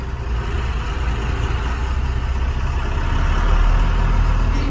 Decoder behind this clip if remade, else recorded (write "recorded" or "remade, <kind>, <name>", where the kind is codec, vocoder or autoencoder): recorded